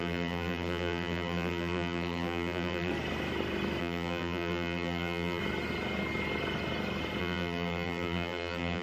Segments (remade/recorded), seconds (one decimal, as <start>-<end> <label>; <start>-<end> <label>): 0.0-2.9 remade; 2.9-3.8 recorded; 3.8-5.4 remade; 5.4-7.2 recorded; 7.2-8.8 remade